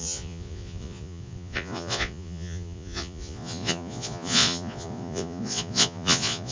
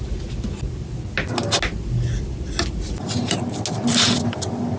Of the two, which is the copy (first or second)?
first